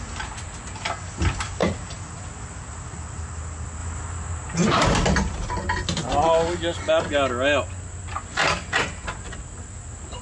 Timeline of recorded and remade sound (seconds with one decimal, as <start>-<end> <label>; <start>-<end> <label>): 0.0-10.2 recorded